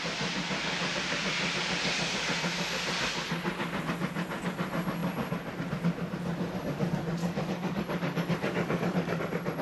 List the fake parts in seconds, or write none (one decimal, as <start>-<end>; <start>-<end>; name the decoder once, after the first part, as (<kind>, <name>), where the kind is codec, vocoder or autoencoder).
7.2-9.2 (codec, DAC)